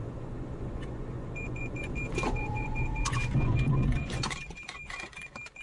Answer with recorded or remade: remade